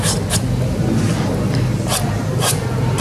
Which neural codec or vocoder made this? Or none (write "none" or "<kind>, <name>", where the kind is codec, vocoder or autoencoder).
none